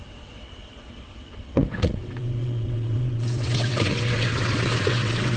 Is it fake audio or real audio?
fake